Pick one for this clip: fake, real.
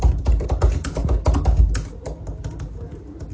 real